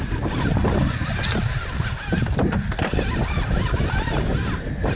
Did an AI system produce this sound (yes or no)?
no